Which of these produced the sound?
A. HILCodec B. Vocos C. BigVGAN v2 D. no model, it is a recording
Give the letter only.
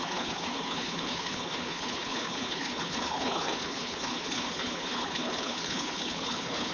A